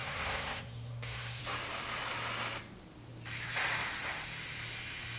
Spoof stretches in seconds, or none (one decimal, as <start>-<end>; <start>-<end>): 0.0-1.4